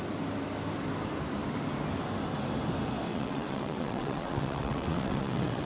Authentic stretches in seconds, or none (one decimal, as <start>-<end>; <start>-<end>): 0.0-3.1